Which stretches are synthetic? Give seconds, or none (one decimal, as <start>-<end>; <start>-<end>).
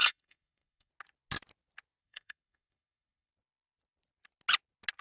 0.0-0.9; 2.0-3.3